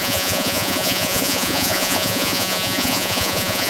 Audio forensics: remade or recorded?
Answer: remade